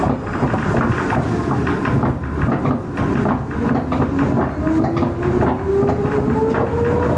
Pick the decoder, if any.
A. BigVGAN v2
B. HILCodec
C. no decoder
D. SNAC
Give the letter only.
C